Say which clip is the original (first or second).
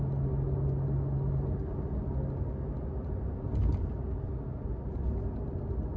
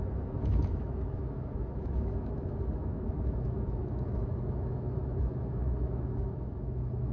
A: first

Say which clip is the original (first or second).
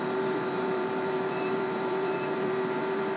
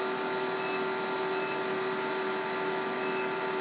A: second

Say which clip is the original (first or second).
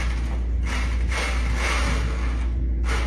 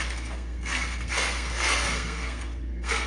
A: first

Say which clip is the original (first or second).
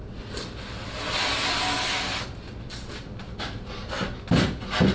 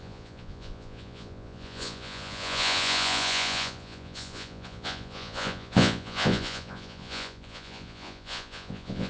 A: first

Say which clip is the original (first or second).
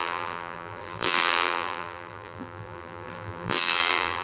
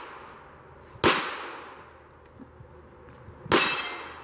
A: second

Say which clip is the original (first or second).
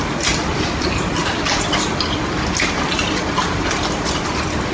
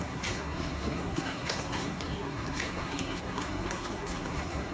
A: first